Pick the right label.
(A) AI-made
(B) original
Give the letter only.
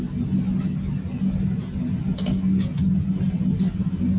B